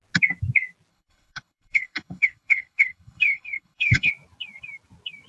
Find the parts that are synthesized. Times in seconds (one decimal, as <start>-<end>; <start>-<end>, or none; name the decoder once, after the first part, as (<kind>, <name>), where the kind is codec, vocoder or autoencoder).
0.9-4.1 (codec, HILCodec)